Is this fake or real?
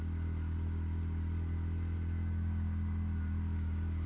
real